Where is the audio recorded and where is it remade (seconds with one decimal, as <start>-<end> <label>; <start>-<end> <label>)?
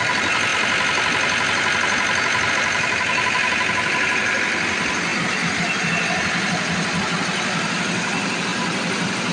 0.0-9.3 recorded